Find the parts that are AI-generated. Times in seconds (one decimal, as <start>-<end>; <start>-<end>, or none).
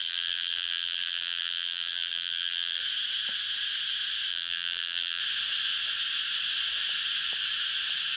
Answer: 0.0-2.8; 4.3-5.2